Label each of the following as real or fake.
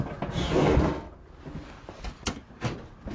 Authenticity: real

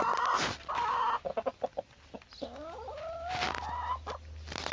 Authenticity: real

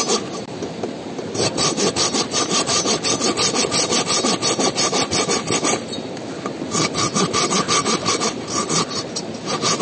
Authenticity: real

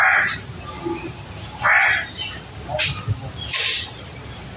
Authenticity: real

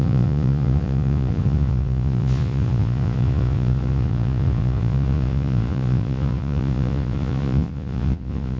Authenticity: fake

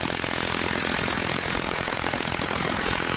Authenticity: fake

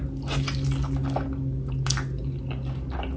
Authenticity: real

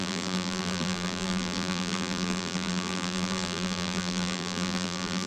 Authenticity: fake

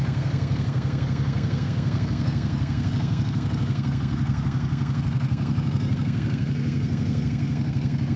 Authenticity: fake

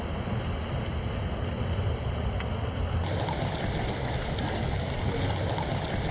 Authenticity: real